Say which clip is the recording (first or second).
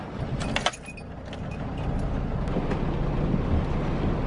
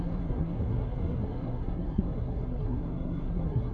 first